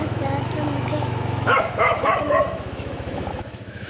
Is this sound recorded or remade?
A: remade